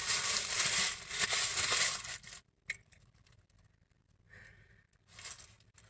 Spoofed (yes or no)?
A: no